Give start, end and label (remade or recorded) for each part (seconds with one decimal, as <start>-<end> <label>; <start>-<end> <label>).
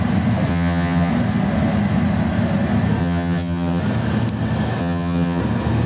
0.0-0.5 recorded; 0.5-1.1 remade; 1.1-3.0 recorded; 3.0-3.8 remade; 3.8-4.8 recorded; 4.8-5.4 remade; 5.4-5.9 recorded